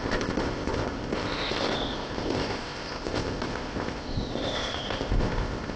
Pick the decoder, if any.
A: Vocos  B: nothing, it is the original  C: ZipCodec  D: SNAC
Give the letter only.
C